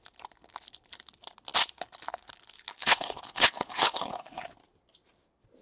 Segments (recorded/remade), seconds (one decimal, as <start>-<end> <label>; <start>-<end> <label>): 0.0-2.7 recorded; 2.7-4.4 remade; 4.4-5.6 recorded

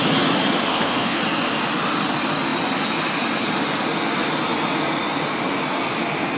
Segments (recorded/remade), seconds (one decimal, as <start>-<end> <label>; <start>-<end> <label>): 0.0-0.7 recorded; 0.7-1.2 remade; 1.2-6.4 recorded

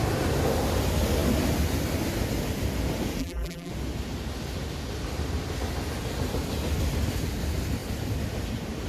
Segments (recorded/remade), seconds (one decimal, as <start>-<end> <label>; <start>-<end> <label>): 0.0-3.2 recorded; 3.2-3.7 remade; 3.7-8.9 recorded

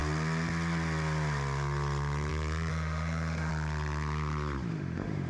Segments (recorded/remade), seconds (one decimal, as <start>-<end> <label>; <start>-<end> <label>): 0.0-2.7 recorded; 2.7-3.5 remade; 3.5-4.7 recorded; 4.7-5.3 remade

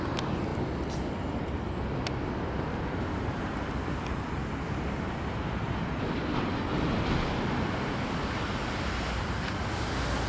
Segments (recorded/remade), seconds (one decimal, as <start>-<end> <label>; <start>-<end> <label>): 0.0-10.3 recorded